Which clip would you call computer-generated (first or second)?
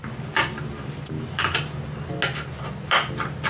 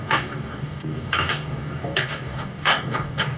second